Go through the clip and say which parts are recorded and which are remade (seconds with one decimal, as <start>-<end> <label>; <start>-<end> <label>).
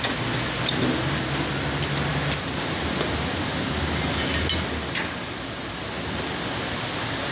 0.0-7.3 recorded